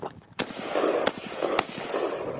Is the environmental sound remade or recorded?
remade